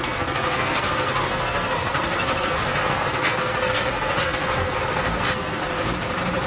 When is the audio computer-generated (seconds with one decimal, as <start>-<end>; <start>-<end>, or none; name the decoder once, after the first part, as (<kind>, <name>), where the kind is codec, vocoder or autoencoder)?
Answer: 0.0-5.6 (codec, SNAC)